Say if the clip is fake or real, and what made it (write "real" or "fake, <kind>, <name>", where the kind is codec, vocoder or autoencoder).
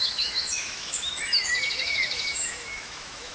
fake, autoencoder, DAC-VAE